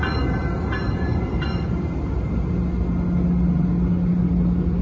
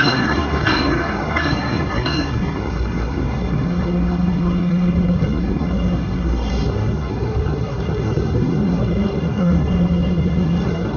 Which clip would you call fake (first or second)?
second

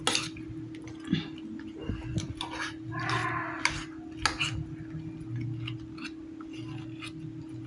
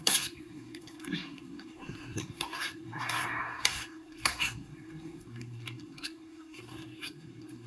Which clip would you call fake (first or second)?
second